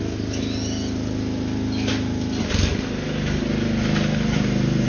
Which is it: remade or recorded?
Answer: recorded